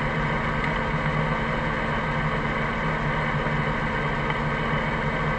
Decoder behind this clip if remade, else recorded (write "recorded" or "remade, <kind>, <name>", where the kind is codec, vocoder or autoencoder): recorded